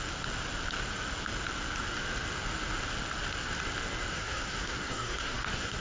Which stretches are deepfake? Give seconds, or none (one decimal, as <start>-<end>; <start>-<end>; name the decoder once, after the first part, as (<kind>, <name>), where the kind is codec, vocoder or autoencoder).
4.1-5.8 (codec, SNAC)